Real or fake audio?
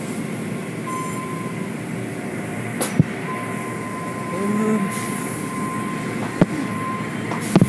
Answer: real